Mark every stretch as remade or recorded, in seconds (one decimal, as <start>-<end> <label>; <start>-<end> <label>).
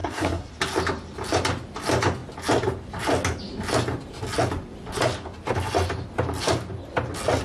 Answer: 0.0-0.5 remade; 0.5-7.4 recorded